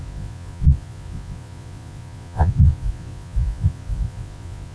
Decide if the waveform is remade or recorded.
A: remade